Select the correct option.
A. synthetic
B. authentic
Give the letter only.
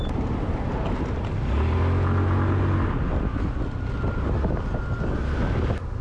B